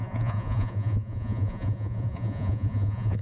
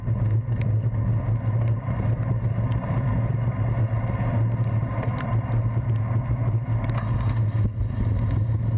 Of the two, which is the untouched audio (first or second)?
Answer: second